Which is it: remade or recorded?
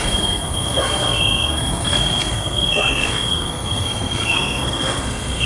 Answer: remade